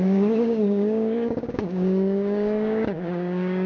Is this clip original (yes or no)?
no